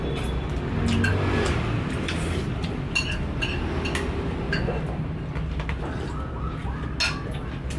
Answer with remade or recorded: recorded